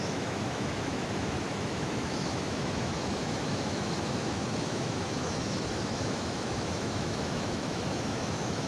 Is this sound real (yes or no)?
no